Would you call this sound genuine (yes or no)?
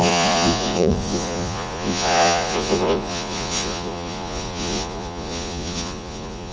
no